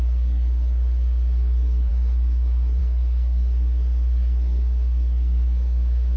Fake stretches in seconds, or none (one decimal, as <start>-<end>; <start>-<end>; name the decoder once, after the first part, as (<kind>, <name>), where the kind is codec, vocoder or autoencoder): 0.0-6.2 (codec, SNAC)